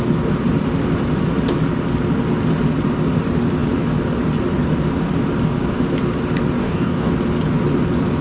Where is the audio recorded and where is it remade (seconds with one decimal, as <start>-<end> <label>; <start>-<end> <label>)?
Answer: 0.0-6.6 recorded; 6.6-7.1 remade; 7.1-8.2 recorded